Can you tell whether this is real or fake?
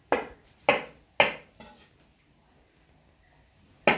real